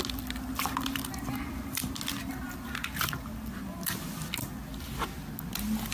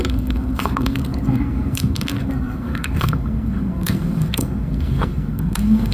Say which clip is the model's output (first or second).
second